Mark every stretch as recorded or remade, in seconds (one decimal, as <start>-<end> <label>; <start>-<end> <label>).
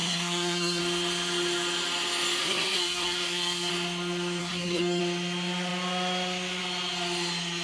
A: 0.0-0.8 remade; 0.8-2.4 recorded; 2.4-3.7 remade; 3.7-4.4 recorded; 4.4-5.0 remade; 5.0-7.6 recorded